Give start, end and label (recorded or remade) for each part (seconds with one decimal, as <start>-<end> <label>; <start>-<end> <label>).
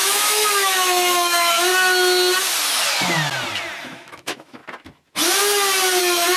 0.0-1.7 remade; 1.7-3.8 recorded; 3.8-4.6 remade; 4.6-6.0 recorded; 6.0-6.4 remade